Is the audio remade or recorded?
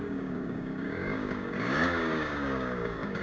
remade